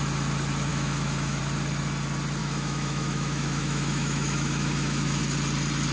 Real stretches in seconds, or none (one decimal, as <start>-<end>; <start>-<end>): 0.0-0.7; 1.4-2.4; 5.2-5.9